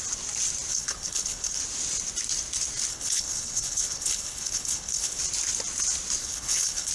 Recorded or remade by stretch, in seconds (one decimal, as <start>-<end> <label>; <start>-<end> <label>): 0.0-0.7 recorded; 0.7-1.6 remade; 1.6-2.9 recorded; 2.9-5.2 remade; 5.2-6.2 recorded; 6.2-6.9 remade